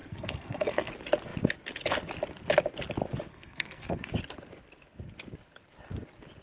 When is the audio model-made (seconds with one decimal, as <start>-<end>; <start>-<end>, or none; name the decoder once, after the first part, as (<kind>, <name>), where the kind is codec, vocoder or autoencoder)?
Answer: 0.0-0.9 (codec, SNAC); 3.3-4.1